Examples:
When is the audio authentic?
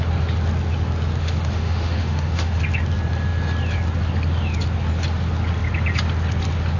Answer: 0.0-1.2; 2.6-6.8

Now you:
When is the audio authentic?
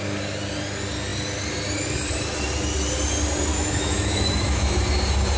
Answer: 0.0-3.5; 4.8-5.4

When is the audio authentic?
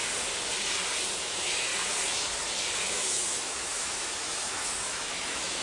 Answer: 0.0-1.2; 1.7-2.8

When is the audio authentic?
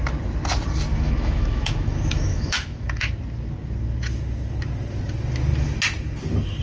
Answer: 0.0-0.9; 3.1-6.6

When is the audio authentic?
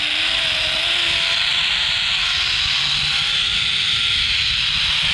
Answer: 0.0-5.1